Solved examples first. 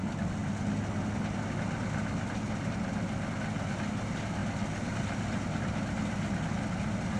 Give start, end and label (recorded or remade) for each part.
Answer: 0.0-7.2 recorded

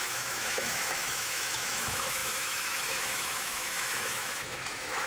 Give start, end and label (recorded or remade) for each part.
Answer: 0.0-5.1 remade